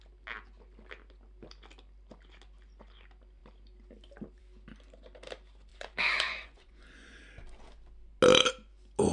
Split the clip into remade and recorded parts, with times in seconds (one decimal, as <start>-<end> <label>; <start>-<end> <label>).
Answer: 0.0-5.7 recorded; 5.7-7.2 remade; 7.2-9.1 recorded